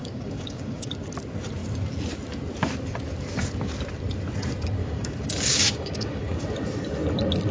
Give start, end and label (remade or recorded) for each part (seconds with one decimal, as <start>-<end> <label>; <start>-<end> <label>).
0.0-0.8 remade; 0.8-4.8 recorded; 4.8-6.4 remade; 6.4-7.5 recorded